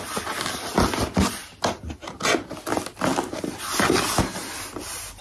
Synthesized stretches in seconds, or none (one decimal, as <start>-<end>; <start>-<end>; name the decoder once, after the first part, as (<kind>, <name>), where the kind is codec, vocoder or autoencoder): none